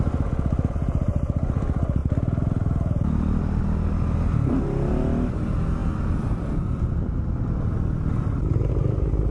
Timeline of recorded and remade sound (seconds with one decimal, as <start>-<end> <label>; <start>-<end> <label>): 0.0-9.3 recorded